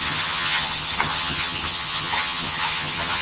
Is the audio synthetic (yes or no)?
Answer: yes